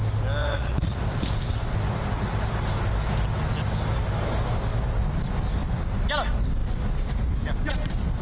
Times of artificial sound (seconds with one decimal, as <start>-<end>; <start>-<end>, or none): 0.4-1.0